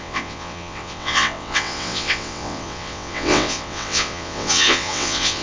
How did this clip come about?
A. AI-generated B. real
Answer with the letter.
A